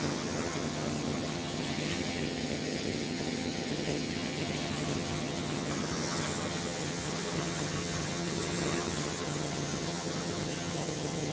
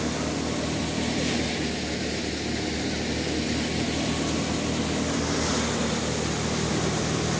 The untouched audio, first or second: second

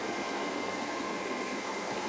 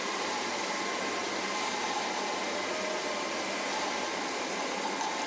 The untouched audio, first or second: second